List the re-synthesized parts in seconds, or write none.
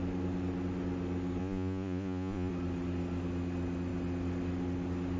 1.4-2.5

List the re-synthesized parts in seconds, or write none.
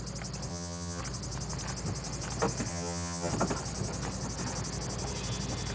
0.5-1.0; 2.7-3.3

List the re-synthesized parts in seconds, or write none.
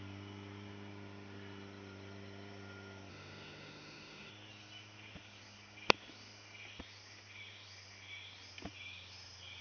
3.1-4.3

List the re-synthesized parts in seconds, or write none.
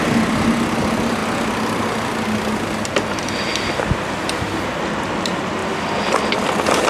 none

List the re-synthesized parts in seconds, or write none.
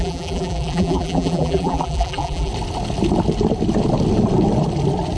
0.0-2.5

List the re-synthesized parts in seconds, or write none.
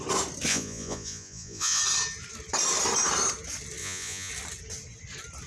0.5-1.8; 3.8-4.3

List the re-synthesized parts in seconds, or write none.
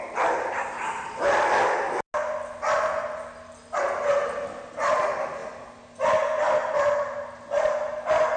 none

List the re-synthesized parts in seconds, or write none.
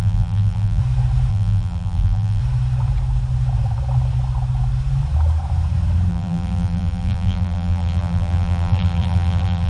0.0-0.8; 1.3-2.4; 6.1-9.7